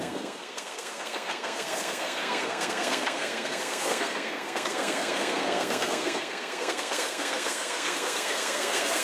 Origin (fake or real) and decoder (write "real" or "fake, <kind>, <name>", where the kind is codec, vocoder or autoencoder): fake, codec, SNAC